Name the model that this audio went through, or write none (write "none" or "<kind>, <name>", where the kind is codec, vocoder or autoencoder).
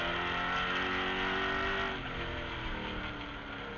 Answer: none